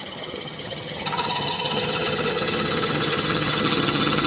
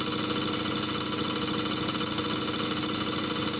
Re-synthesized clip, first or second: first